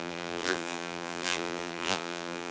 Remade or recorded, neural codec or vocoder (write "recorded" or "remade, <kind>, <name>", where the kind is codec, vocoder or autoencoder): remade, vocoder, BigVGAN v2